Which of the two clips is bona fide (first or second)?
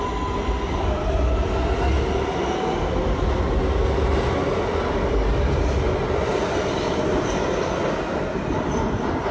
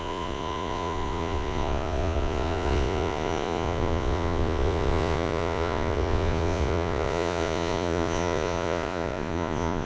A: first